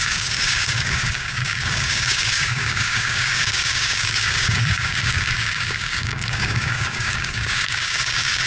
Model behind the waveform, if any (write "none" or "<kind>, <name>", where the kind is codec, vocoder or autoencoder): codec, DAC